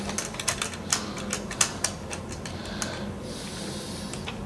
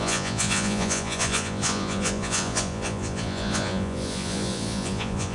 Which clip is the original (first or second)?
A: first